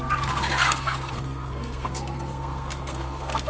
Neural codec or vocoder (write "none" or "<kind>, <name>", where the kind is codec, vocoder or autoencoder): codec, SNAC